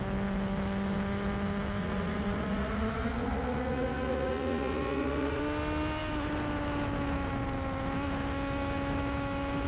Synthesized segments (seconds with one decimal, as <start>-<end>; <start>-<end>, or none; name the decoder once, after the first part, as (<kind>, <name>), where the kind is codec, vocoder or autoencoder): 1.8-5.4 (vocoder, Vocos)